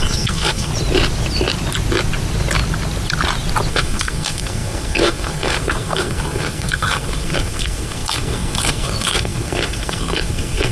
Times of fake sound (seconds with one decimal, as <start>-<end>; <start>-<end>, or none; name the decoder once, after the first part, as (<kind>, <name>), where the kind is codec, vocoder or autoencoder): 0.0-0.7 (codec, SNAC); 3.7-10.7